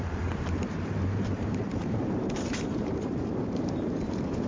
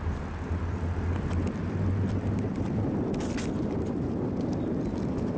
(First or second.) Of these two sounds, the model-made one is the first